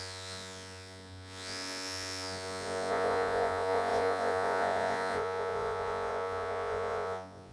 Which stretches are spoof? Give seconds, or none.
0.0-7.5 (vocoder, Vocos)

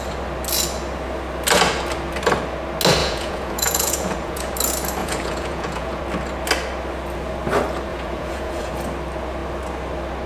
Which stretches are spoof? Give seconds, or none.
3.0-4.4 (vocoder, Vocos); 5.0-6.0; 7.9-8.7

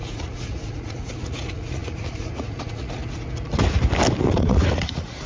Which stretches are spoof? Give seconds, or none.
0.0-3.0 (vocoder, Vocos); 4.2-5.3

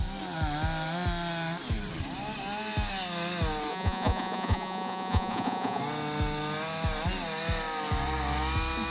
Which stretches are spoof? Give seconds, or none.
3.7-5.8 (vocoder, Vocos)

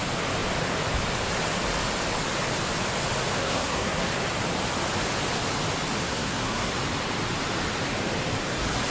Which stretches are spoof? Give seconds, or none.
3.4-4.1 (codec, SNAC); 6.0-6.7